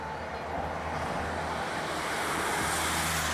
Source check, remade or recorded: recorded